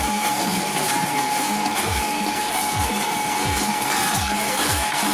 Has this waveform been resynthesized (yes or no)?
yes